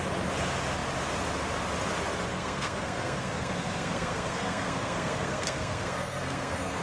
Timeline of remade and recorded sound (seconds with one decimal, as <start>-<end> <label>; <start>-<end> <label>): 0.0-2.3 recorded; 2.3-6.8 remade